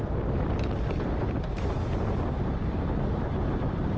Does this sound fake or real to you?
real